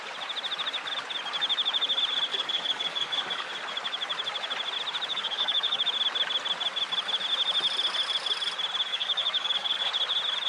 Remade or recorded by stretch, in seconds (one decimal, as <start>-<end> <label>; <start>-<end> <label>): 0.0-2.3 recorded; 2.3-3.5 remade; 3.5-5.1 recorded; 5.1-5.8 remade; 5.8-8.9 recorded; 8.9-9.9 remade; 9.9-10.5 recorded

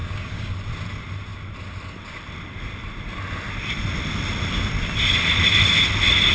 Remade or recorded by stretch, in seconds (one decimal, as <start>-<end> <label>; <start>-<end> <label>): 0.0-0.5 remade; 0.5-6.3 recorded

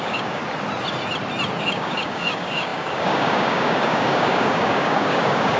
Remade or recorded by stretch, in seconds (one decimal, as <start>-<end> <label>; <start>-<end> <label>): 0.0-0.4 remade; 0.4-1.6 recorded; 1.6-5.6 remade

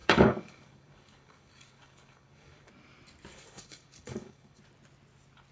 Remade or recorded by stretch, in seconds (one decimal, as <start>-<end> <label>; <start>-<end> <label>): 0.0-2.7 remade; 2.7-3.3 recorded; 3.3-4.6 remade; 4.6-5.5 recorded

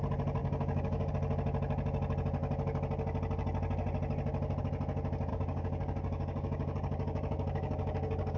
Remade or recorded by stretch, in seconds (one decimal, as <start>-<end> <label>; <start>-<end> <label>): 0.0-0.4 recorded; 0.4-1.1 remade; 1.1-5.3 recorded; 5.3-8.4 remade